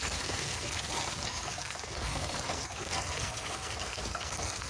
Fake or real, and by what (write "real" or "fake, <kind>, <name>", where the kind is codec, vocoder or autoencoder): fake, codec, SNAC